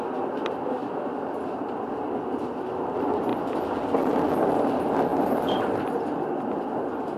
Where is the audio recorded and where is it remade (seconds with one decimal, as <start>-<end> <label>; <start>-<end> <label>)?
0.0-0.8 recorded; 0.8-1.7 remade; 1.7-5.1 recorded; 5.1-6.2 remade; 6.2-7.2 recorded